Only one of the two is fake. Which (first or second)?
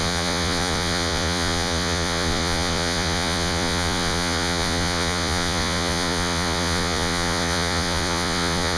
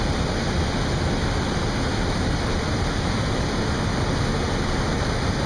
first